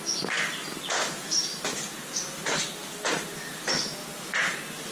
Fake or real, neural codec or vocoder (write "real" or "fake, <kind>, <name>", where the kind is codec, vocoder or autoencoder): real